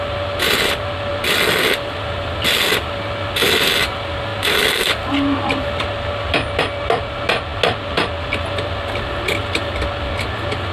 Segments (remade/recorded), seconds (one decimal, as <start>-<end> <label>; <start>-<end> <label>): 0.0-10.7 recorded